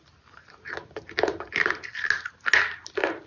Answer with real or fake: real